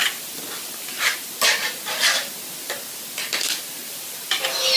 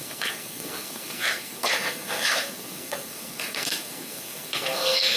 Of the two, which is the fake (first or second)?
second